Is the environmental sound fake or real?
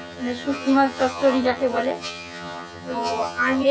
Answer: fake